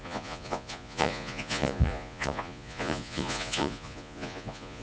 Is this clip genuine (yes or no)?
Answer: no